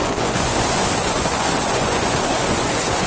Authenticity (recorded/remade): remade